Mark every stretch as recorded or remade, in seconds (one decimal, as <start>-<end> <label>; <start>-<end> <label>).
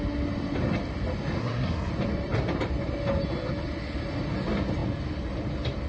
0.0-1.4 recorded; 1.4-1.9 remade; 1.9-5.9 recorded